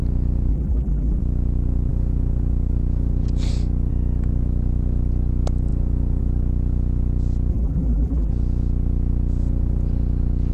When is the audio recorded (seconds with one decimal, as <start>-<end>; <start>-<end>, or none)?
0.0-0.5; 1.2-7.5; 8.3-10.5